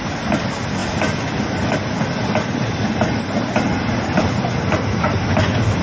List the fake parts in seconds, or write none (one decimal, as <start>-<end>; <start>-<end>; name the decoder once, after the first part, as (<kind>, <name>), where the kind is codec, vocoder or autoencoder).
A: none

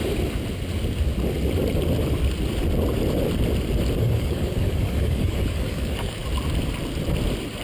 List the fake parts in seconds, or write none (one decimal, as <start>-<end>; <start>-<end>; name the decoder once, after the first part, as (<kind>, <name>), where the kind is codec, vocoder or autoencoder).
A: 4.0-6.2 (codec, DAC)

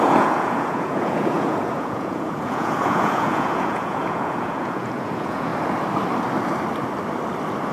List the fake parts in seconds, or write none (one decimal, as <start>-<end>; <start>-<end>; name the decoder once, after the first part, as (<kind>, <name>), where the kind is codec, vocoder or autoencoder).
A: 0.0-5.5 (vocoder, Vocos)

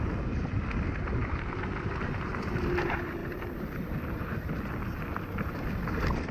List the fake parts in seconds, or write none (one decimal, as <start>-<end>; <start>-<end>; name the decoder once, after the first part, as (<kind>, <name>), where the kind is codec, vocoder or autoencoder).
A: none

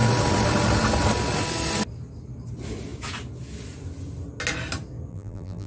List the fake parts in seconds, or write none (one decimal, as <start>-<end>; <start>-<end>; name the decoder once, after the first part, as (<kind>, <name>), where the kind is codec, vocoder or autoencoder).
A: 5.1-5.7 (vocoder, BigVGAN v2)

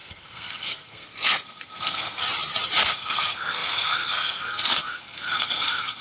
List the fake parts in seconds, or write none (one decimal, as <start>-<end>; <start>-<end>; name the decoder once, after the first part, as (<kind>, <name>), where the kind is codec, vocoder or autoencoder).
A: 0.0-2.2 (codec, SNAC); 2.8-6.0

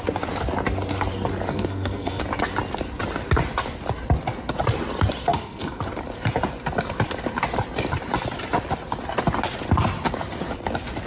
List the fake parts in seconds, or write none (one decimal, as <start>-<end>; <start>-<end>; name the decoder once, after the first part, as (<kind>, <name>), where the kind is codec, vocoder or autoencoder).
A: 1.5-2.2 (codec, SNAC); 5.3-5.8